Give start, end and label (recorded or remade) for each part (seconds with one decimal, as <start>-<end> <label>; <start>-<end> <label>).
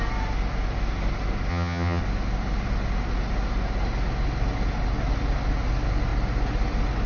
0.0-1.5 recorded; 1.5-2.0 remade; 2.0-7.1 recorded